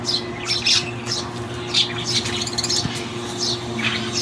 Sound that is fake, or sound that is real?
real